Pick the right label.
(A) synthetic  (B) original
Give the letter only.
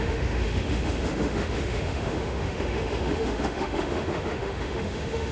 A